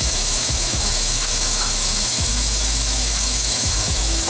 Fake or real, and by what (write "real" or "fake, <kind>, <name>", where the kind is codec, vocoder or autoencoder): fake, autoencoder, DAC-VAE